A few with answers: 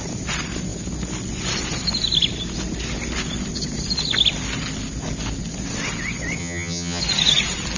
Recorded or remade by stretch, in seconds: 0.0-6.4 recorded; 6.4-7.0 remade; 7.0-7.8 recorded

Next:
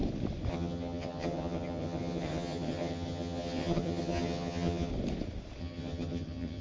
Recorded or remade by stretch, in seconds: 0.0-0.5 recorded; 0.5-4.9 remade; 4.9-5.6 recorded; 5.6-6.6 remade

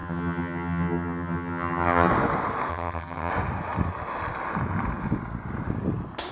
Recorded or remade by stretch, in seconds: 0.0-2.1 remade; 2.1-2.7 recorded; 2.7-3.3 remade; 3.3-6.3 recorded

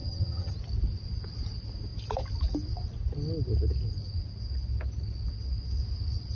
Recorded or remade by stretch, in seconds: 0.0-0.5 remade; 0.5-6.3 recorded

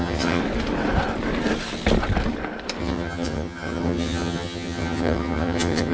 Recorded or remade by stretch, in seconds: 0.0-0.4 remade; 0.4-2.8 recorded; 2.8-5.9 remade

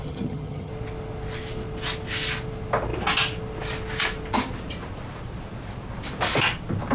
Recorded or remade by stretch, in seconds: 0.0-0.7 remade; 0.7-6.9 recorded